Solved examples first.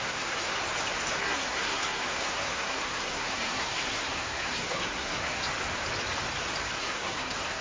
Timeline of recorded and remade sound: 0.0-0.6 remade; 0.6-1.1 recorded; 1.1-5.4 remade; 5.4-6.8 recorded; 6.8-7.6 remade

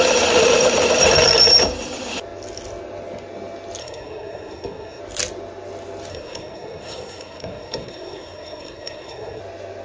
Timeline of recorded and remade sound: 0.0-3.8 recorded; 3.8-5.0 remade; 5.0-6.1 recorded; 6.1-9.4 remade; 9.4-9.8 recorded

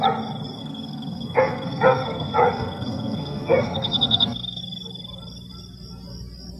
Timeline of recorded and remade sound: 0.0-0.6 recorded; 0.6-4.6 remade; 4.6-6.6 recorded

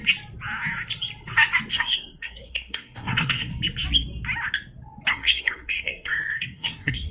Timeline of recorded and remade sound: 0.0-1.7 recorded; 1.7-3.5 remade; 3.5-5.1 recorded; 5.1-7.1 remade

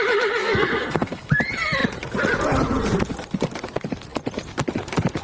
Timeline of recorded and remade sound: 0.0-0.4 recorded; 0.4-1.3 remade; 1.3-5.2 recorded

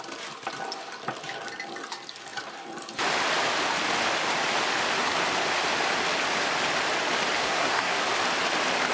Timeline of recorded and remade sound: 0.0-7.4 recorded; 7.4-8.0 remade; 8.0-8.9 recorded